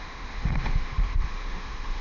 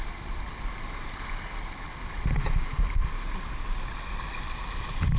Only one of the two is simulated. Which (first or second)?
first